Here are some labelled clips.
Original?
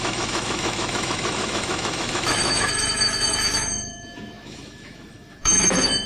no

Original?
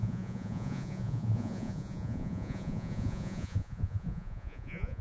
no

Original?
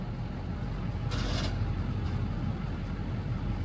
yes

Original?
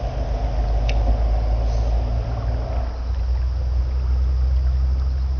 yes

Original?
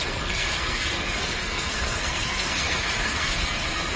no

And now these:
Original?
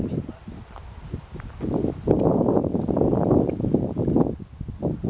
yes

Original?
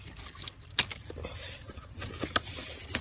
yes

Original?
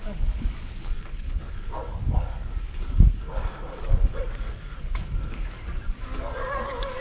no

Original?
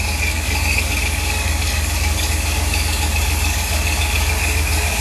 no